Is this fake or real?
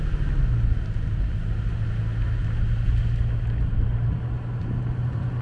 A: real